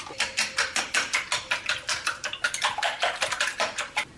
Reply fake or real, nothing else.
real